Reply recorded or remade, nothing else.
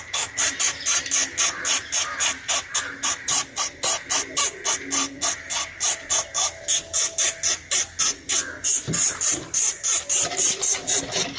recorded